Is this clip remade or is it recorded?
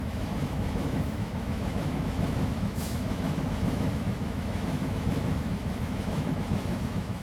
remade